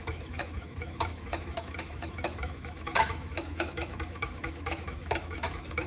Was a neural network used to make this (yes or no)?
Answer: yes